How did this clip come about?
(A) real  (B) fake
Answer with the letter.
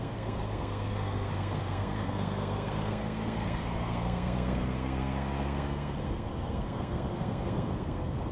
B